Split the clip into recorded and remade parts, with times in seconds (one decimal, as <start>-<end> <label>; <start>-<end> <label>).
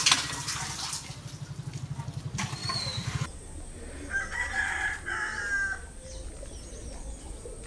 0.0-7.7 recorded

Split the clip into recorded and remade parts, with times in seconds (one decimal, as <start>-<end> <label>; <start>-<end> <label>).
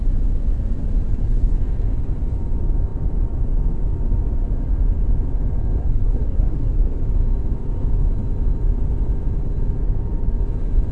0.0-5.8 recorded; 5.8-6.7 remade; 6.7-10.9 recorded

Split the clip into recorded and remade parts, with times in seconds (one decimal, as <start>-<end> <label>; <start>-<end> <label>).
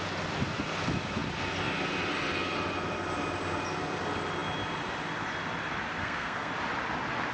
0.0-6.0 recorded; 6.0-6.5 remade; 6.5-7.3 recorded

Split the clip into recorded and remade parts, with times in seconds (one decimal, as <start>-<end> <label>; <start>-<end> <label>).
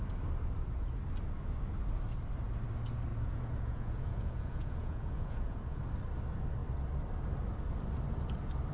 0.0-3.1 recorded; 3.1-5.8 remade; 5.8-8.7 recorded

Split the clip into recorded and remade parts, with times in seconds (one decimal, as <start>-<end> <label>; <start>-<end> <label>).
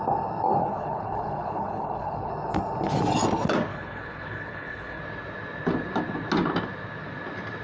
0.0-0.6 recorded; 0.6-2.3 remade; 2.3-3.7 recorded; 3.7-5.0 remade; 5.0-7.6 recorded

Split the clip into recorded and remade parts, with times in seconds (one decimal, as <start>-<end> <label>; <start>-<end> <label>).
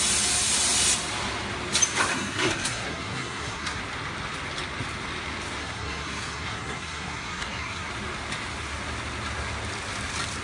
0.0-2.1 recorded; 2.1-3.8 remade; 3.8-5.6 recorded; 5.6-7.9 remade; 7.9-10.4 recorded